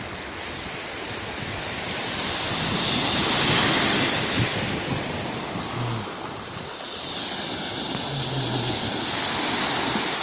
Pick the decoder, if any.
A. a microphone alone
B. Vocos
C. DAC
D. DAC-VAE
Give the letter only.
A